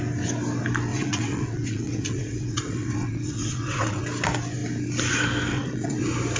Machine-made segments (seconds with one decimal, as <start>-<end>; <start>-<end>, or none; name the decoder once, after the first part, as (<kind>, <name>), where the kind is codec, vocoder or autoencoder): 0.9-4.0 (vocoder, WaveNeXt); 5.5-6.0